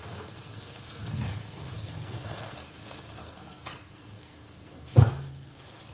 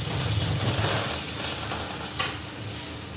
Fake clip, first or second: first